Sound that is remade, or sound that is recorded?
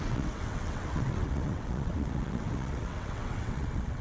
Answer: remade